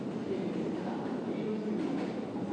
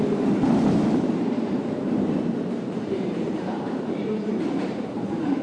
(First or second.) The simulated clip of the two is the second